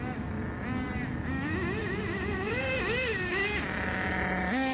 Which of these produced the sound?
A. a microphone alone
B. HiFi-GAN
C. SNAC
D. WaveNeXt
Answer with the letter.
A